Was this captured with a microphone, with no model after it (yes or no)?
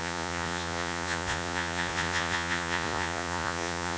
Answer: no